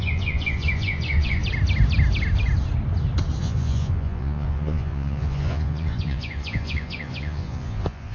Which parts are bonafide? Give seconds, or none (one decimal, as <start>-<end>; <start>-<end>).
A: 1.4-3.4